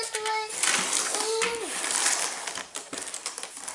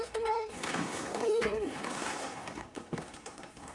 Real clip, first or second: first